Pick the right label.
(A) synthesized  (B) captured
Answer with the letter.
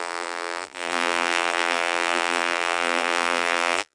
A